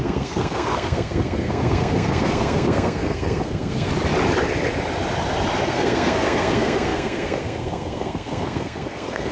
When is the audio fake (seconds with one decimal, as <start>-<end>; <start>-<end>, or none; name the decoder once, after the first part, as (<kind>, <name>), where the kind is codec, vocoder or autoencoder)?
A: 0.0-3.9 (codec, SNAC); 5.6-9.3